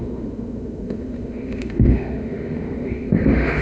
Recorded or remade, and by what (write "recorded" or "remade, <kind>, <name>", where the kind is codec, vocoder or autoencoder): remade, autoencoder, DAC-VAE